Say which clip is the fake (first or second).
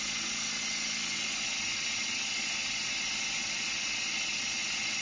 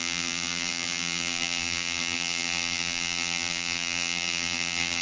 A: second